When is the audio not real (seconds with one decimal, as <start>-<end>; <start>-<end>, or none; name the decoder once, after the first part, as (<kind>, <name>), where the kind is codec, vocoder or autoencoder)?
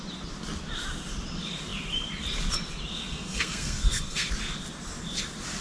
3.0-4.3 (codec, SNAC)